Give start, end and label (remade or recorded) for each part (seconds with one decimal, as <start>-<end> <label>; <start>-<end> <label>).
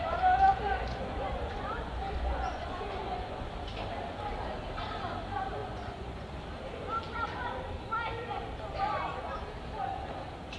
0.0-0.7 recorded; 0.7-3.5 remade; 3.5-5.6 recorded; 5.6-6.3 remade; 6.3-10.6 recorded